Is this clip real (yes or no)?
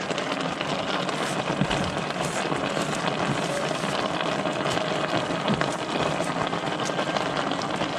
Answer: yes